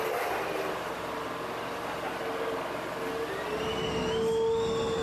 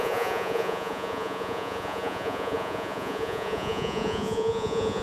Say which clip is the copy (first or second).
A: second